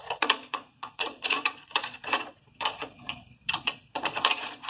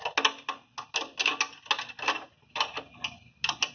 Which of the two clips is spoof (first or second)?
first